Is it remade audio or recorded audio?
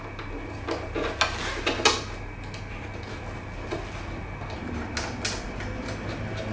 recorded